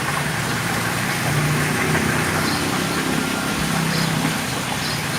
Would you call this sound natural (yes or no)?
yes